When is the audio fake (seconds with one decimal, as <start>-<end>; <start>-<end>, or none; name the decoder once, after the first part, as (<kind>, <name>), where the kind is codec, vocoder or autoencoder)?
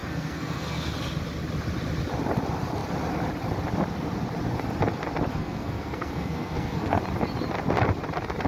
0.0-0.9 (codec, SNAC); 5.3-7.0